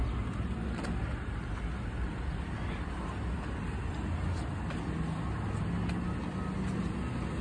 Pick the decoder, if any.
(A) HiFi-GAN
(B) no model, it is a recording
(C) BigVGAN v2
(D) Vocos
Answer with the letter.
B